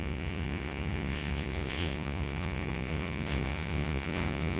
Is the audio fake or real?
fake